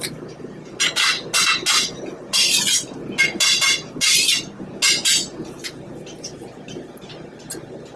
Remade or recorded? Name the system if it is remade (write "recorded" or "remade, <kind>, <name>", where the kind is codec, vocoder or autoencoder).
recorded